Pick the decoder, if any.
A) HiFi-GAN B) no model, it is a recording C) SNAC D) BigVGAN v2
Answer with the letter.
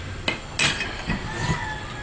B